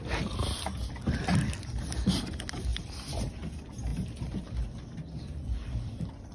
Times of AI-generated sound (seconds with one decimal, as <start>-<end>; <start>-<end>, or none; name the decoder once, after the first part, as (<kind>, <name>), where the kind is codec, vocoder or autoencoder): 2.7-3.3 (vocoder, BigVGAN v2); 3.9-6.3